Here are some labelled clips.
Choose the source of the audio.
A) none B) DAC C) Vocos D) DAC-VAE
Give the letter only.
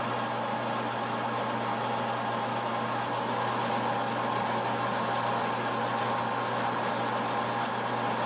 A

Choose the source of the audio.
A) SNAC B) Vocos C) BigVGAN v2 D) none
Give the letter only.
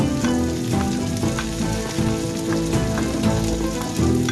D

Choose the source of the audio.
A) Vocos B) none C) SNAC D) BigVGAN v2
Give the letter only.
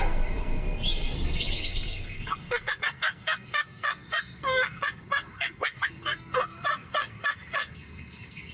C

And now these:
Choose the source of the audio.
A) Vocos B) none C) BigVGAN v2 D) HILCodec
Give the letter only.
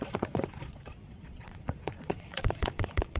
A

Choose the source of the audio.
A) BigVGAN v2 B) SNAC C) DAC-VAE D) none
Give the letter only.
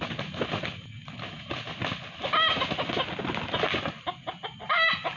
D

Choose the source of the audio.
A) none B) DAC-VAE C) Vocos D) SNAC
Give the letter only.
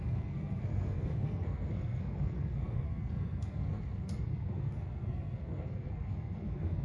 D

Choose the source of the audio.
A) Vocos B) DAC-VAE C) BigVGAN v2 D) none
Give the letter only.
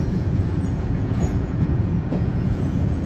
A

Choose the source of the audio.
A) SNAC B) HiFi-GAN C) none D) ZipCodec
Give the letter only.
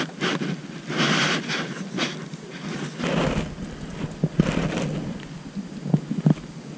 C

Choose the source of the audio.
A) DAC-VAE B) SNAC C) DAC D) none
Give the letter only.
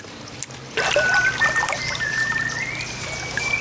D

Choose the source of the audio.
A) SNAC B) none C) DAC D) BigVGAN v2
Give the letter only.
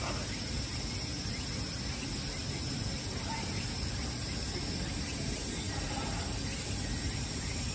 B